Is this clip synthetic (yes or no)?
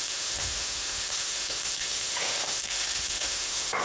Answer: yes